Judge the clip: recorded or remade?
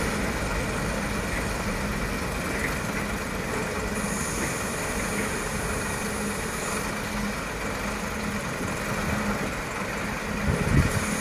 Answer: recorded